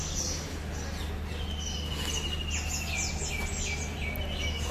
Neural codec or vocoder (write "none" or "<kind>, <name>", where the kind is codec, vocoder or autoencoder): none